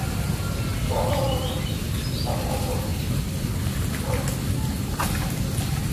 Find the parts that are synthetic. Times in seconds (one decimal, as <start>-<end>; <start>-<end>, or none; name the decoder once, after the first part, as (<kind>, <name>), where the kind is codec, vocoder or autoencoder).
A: 2.9-4.7 (vocoder, BigVGAN v2)